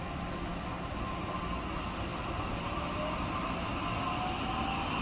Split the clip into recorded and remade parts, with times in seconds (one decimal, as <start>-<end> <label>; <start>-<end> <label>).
0.0-5.0 recorded